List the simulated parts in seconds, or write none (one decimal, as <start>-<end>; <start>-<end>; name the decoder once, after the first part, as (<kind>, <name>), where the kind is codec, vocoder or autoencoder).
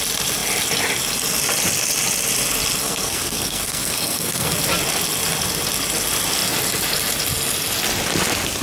2.8-4.6 (codec, SNAC)